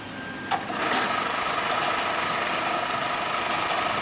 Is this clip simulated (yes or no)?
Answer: no